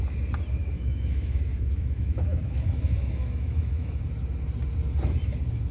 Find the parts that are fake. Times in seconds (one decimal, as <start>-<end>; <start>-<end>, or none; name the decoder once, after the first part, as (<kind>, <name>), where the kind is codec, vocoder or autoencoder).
0.6-4.0 (autoencoder, DAC-VAE)